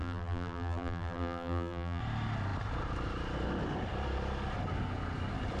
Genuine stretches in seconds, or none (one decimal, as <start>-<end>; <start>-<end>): 2.0-5.6